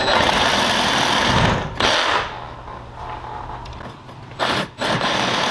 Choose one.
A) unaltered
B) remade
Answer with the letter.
A